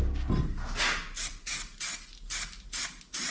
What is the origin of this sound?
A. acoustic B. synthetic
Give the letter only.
A